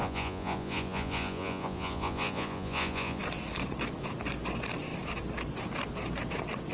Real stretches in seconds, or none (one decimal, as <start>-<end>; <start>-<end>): 3.2-6.7